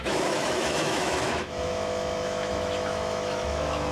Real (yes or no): no